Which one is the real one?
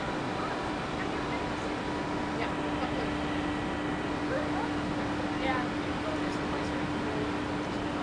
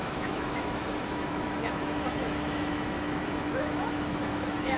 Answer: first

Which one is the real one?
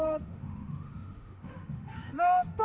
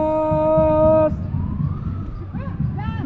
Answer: second